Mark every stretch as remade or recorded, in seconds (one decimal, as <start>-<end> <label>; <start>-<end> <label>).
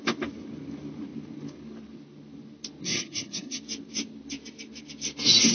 0.0-2.8 recorded; 2.8-3.6 remade; 3.6-5.5 recorded